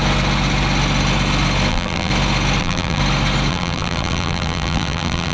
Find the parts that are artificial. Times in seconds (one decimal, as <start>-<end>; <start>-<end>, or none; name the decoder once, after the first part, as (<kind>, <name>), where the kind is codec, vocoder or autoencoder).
1.7-2.1 (vocoder, BigVGAN v2); 2.6-3.0; 3.5-5.3